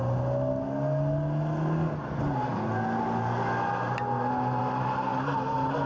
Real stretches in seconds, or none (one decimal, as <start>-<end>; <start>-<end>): 0.0-5.9